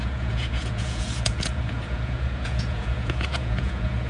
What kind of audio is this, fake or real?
fake